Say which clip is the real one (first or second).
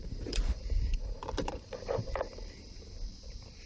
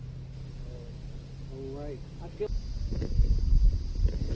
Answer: second